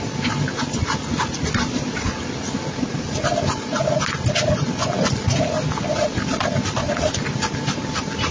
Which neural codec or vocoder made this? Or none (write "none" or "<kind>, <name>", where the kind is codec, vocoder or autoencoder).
none